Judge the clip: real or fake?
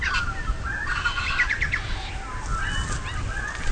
real